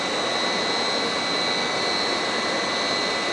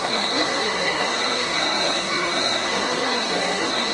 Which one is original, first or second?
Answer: first